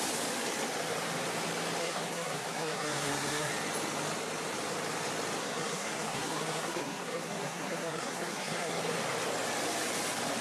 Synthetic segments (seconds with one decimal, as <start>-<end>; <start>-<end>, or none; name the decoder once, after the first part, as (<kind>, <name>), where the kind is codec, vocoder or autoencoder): 1.8-3.5 (codec, SNAC); 5.4-8.8